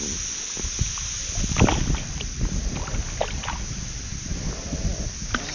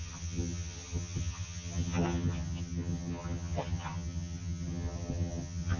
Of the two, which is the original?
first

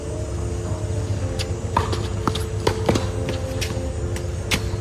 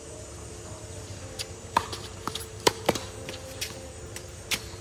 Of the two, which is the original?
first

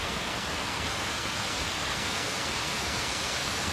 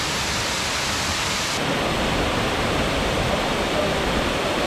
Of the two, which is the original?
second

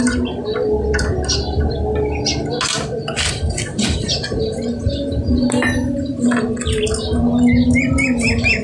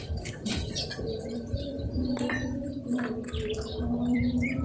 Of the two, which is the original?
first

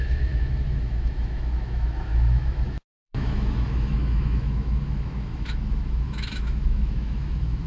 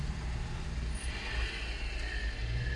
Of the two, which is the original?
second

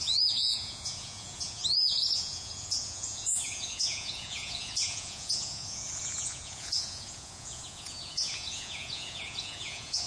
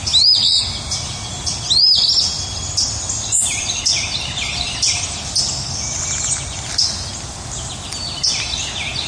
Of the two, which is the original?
second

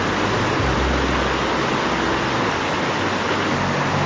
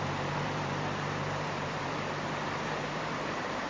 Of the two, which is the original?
first